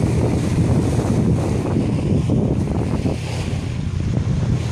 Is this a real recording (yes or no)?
yes